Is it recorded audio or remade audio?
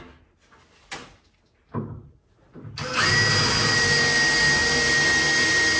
recorded